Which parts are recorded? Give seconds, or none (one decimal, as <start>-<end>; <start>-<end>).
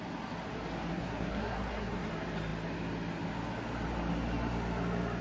0.0-0.9; 2.1-5.2